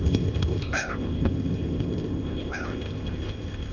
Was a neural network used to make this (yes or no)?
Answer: yes